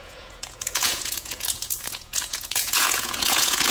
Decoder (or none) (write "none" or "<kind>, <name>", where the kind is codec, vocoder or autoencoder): vocoder, Vocos